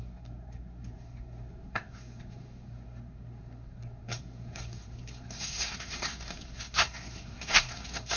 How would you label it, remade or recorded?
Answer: remade